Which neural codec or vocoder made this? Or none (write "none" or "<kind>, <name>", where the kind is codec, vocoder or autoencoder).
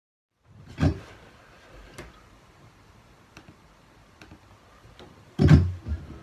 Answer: none